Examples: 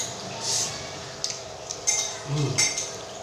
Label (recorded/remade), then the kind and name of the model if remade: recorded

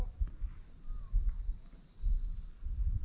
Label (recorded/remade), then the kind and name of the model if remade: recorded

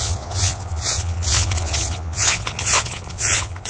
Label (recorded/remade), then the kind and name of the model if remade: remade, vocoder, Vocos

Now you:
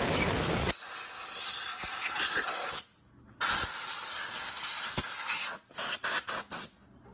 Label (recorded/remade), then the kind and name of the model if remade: recorded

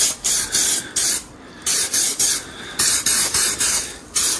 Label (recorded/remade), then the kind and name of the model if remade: recorded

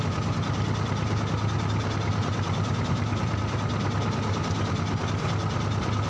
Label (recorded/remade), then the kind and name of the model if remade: recorded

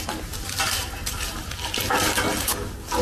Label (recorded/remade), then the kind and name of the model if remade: recorded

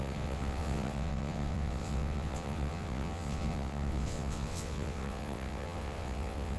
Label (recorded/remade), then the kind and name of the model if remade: remade, vocoder, WaveNeXt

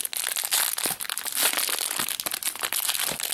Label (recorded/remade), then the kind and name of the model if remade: recorded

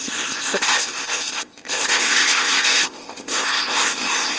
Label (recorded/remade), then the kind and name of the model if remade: remade, codec, ZipCodec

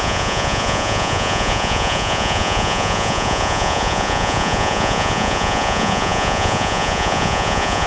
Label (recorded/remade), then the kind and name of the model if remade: remade, vocoder, Vocos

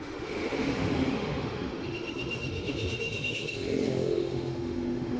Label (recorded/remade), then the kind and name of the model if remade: remade, autoencoder, DAC-VAE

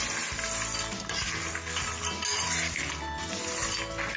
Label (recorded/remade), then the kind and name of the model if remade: recorded